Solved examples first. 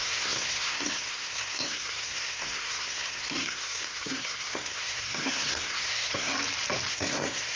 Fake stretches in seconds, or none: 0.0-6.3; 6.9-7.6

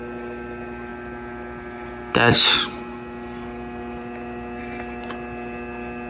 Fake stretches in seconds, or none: none